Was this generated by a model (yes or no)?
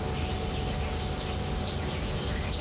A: no